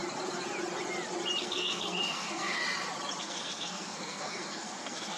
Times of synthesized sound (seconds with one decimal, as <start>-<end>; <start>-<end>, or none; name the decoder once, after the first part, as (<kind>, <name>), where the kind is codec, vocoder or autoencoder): 1.4-2.6 (codec, SNAC); 3.2-5.2